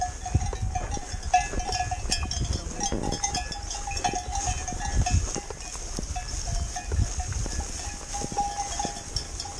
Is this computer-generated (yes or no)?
no